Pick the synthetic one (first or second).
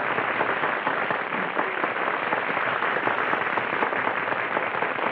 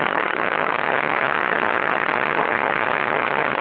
second